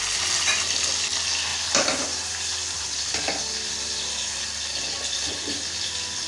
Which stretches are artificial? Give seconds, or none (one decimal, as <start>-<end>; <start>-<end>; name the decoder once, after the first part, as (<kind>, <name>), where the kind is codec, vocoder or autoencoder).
1.5-4.8 (vocoder, BigVGAN v2)